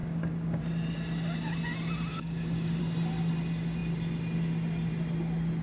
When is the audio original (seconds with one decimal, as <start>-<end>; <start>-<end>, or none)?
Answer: 0.6-2.1; 2.8-5.6